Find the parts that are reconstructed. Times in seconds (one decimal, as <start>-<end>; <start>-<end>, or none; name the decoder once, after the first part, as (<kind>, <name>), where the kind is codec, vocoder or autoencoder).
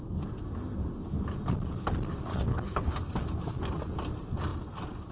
2.3-3.0 (codec, HILCodec)